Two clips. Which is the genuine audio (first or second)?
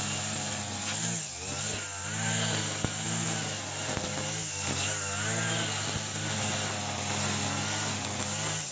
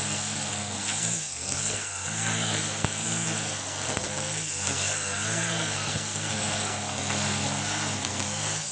first